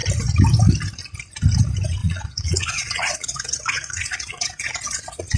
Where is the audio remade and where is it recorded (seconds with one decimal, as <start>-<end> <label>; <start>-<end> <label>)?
0.0-2.0 recorded; 2.0-5.4 remade